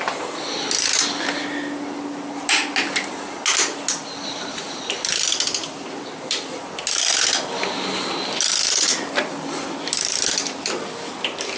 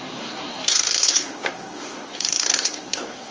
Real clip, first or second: first